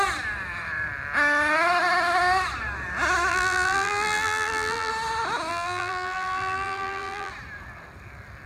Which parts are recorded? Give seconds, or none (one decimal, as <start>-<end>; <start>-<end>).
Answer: 0.0-3.3; 4.9-5.5; 7.3-8.5